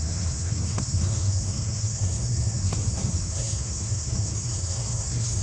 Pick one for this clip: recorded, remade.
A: remade